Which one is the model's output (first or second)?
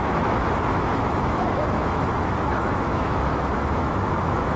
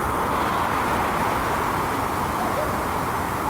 first